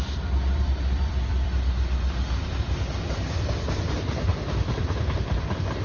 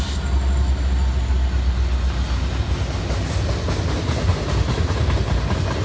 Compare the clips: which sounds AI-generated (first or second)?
first